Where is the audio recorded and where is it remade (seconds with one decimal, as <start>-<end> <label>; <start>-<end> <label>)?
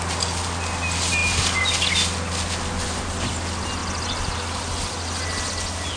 0.0-6.0 recorded